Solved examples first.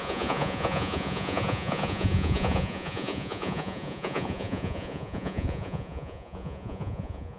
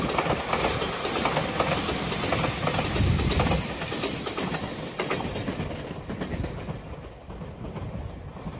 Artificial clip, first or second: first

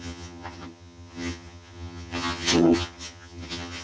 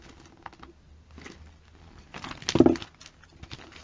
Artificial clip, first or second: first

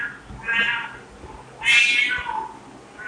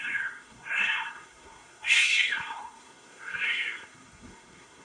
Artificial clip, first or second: second